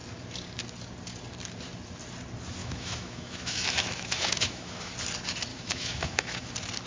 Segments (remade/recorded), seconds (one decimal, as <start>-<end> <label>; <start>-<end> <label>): 0.0-2.6 recorded; 2.6-4.9 remade; 4.9-5.5 recorded; 5.5-6.5 remade; 6.5-6.9 recorded